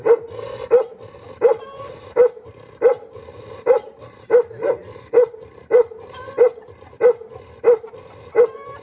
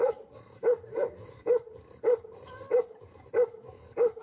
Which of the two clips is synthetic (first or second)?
second